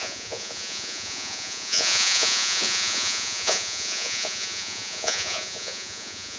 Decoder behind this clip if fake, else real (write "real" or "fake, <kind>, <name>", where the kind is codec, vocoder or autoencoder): fake, vocoder, Vocos